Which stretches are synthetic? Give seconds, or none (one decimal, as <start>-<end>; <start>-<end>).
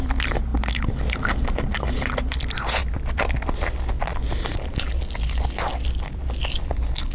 none